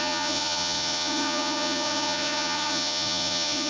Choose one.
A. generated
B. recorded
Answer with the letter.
A